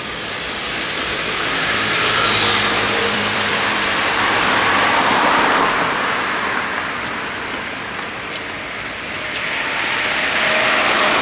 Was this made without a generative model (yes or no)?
no